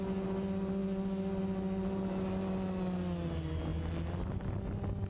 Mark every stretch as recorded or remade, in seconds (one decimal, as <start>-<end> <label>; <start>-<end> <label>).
0.0-5.1 recorded